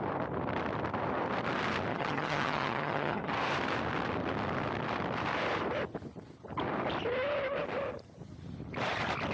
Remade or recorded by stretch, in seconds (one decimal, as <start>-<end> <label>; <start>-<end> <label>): 0.0-1.9 recorded; 1.9-3.3 remade; 3.3-9.3 recorded